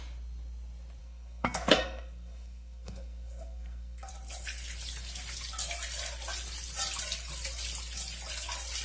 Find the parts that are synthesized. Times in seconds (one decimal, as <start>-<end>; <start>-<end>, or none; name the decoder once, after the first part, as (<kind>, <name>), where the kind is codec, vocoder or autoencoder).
1.0-4.1 (codec, SNAC)